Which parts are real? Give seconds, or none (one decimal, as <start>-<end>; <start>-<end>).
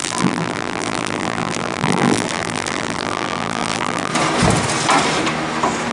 4.1-5.9